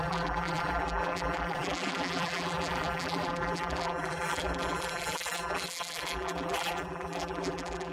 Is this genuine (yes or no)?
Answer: no